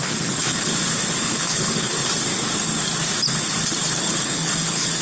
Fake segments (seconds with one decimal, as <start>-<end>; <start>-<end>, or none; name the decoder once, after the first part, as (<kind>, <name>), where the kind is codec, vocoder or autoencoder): 0.0-0.7 (codec, HILCodec); 1.2-2.0; 4.0-5.0